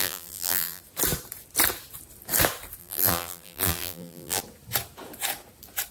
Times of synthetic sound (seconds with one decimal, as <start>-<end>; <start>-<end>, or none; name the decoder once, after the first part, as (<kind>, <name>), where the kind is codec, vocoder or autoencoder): 0.0-0.8 (vocoder, BigVGAN v2); 2.8-4.4